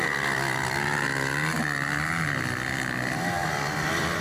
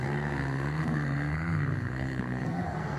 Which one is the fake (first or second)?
second